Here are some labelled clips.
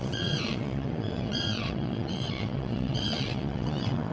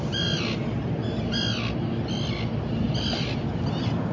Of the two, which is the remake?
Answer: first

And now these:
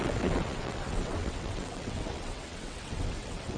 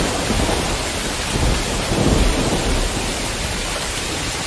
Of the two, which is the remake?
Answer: first